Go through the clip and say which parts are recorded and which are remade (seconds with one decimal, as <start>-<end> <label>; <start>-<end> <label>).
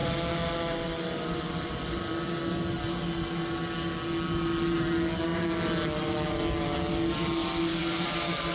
0.0-8.5 recorded